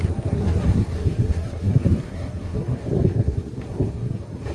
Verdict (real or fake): fake